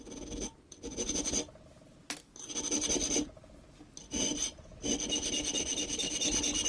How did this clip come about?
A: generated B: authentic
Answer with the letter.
B